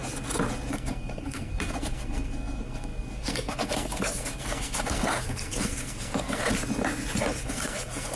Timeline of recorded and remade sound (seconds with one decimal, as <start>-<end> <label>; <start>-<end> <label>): 0.0-0.7 recorded; 0.7-6.4 remade; 6.4-7.4 recorded; 7.4-8.2 remade